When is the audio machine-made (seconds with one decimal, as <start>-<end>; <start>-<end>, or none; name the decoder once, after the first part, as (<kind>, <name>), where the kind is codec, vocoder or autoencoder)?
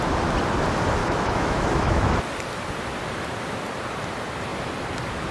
1.0-2.2 (autoencoder, DAC-VAE)